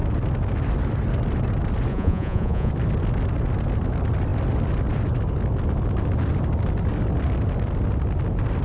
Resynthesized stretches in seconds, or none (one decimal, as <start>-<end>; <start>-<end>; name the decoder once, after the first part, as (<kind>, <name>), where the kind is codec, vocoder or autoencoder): 1.9-2.7 (vocoder, Vocos)